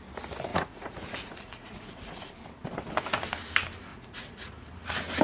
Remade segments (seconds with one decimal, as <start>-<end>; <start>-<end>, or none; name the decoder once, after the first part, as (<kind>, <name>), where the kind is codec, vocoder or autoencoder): 0.5-2.3 (vocoder, Vocos); 3.9-4.7